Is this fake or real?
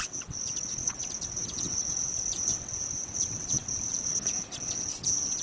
fake